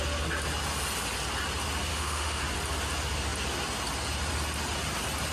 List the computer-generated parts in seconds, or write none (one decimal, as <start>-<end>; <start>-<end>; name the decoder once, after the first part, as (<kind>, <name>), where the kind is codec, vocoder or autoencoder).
1.9-2.4 (autoencoder, DAC-VAE)